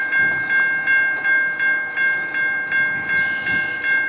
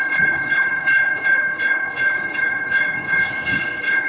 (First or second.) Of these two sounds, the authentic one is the first